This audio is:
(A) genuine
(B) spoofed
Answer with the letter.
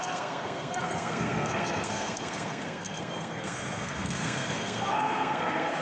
B